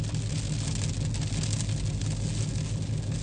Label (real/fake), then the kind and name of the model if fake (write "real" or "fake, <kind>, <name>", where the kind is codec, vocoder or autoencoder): real